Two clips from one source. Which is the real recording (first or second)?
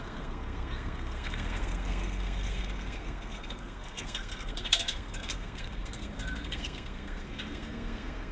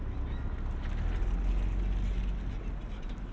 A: second